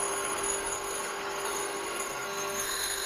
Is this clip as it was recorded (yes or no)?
no